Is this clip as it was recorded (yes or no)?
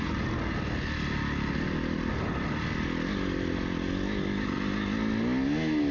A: yes